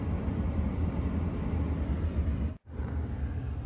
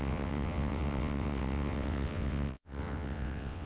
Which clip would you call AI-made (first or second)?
second